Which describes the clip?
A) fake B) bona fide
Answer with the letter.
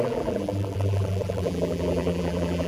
A